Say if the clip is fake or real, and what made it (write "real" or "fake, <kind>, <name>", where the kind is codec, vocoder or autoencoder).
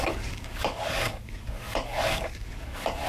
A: fake, codec, DAC